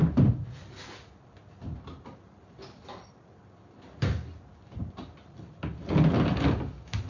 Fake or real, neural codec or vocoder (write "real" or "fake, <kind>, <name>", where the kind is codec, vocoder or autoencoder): real